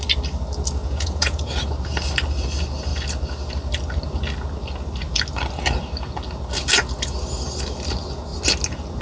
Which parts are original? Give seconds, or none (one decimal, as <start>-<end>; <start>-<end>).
0.0-0.8; 1.4-9.0